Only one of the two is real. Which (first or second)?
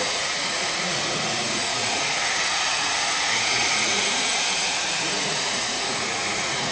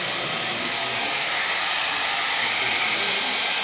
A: second